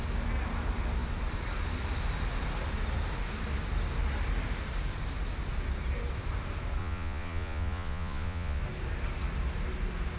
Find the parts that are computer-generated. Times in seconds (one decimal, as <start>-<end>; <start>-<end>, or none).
6.8-8.6